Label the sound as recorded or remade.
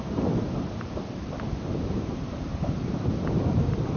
remade